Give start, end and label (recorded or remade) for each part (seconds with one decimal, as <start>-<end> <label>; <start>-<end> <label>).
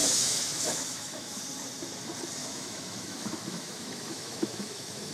0.0-1.4 remade; 1.4-2.4 recorded; 2.4-5.1 remade